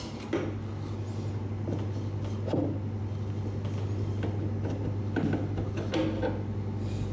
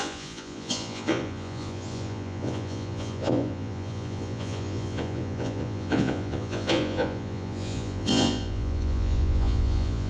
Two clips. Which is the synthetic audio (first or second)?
second